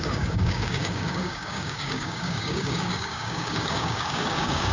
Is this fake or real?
fake